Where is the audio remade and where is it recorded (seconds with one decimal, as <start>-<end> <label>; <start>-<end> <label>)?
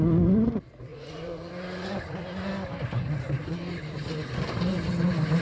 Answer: 0.0-0.9 recorded; 0.9-1.5 remade; 1.5-5.4 recorded